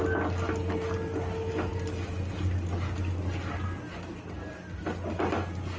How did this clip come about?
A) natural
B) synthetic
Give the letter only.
A